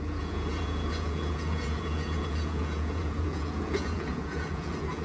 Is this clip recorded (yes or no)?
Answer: no